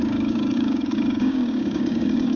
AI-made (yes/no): yes